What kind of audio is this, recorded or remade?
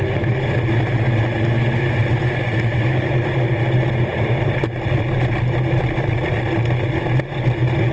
recorded